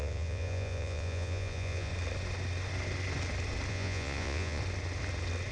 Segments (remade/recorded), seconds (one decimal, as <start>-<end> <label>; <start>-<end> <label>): 0.0-1.9 remade; 1.9-3.7 recorded; 3.7-4.6 remade; 4.6-5.5 recorded